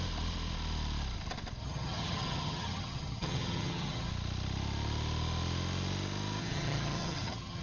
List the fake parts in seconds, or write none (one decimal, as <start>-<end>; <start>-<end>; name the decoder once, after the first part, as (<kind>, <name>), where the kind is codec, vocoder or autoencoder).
1.6-4.1 (vocoder, HiFi-GAN); 6.4-7.6